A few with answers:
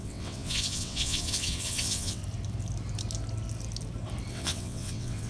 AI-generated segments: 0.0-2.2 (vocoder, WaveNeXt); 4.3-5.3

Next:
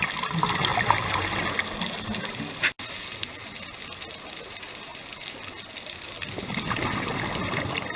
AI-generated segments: none